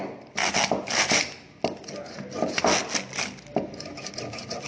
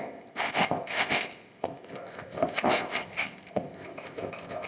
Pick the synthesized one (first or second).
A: second